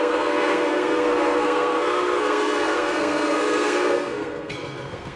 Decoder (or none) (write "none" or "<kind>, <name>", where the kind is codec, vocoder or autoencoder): codec, SNAC